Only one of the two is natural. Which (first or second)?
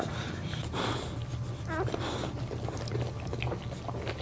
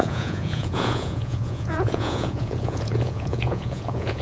first